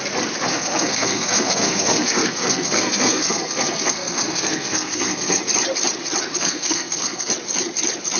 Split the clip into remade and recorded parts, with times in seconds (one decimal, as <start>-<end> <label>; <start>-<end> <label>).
0.0-0.5 recorded; 0.5-5.4 remade; 5.4-6.4 recorded; 6.4-7.3 remade; 7.3-8.2 recorded